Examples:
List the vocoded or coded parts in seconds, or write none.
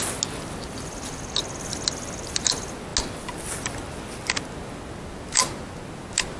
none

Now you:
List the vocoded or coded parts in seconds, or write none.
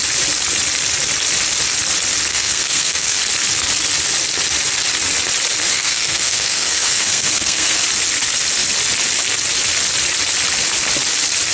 2.3-3.2; 5.7-7.8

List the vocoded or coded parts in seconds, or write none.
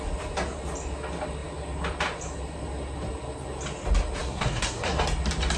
4.2-5.0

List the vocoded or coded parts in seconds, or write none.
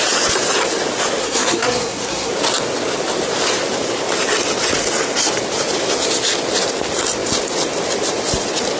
1.2-2.3